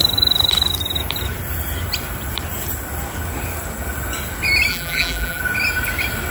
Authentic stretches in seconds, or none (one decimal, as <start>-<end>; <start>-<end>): 0.0-4.7; 5.4-6.3